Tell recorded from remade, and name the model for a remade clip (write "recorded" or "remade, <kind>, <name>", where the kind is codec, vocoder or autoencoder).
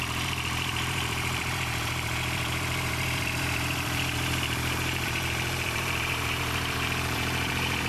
remade, vocoder, BigVGAN v2